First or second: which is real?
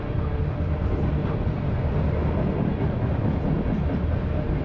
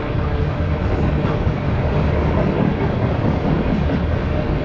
first